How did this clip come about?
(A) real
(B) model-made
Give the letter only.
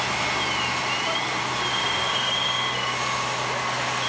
A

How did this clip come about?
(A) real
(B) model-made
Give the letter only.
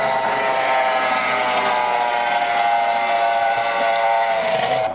A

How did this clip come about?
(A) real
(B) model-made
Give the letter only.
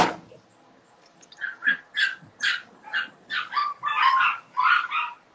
A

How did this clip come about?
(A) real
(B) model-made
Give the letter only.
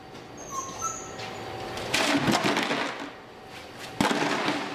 A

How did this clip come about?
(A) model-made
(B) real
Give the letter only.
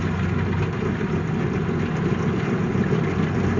B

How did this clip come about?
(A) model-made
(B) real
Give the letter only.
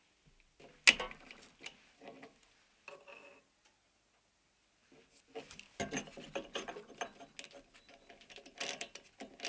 B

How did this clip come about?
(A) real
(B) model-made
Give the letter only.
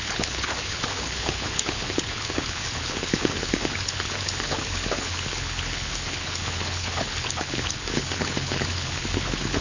B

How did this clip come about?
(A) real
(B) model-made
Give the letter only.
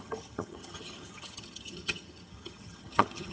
B